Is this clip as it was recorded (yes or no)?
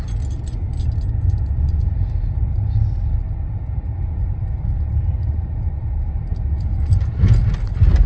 yes